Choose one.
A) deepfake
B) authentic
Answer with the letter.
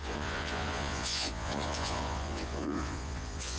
A